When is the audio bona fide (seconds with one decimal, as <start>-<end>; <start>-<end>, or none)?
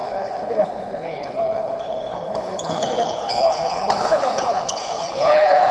none